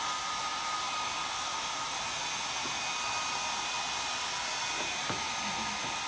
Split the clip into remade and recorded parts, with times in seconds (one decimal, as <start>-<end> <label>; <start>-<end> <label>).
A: 0.0-6.1 recorded